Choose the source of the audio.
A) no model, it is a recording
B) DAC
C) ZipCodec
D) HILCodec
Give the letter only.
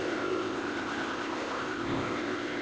C